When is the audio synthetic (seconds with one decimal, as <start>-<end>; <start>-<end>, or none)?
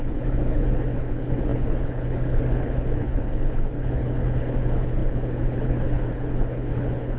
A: 0.0-7.2